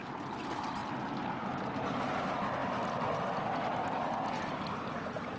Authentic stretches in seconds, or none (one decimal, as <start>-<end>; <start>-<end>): 0.0-5.4

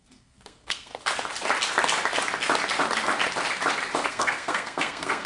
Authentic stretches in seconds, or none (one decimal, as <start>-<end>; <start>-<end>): 0.9-4.1

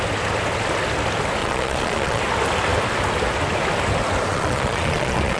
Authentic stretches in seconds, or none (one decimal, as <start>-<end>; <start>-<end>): 0.0-1.4; 2.2-4.3

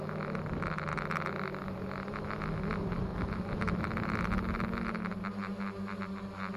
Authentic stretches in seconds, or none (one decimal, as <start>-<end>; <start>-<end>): 0.0-6.6

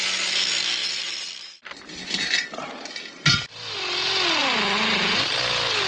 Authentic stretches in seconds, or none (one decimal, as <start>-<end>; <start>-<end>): 0.0-0.8; 2.8-5.9

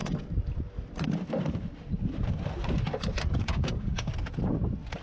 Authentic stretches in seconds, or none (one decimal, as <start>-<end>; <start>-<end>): 0.0-3.4; 4.1-5.0

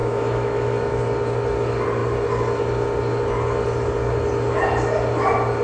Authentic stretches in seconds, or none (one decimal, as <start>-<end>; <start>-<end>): 1.0-5.6

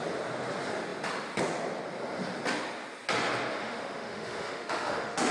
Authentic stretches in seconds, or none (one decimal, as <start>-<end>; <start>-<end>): 0.0-3.6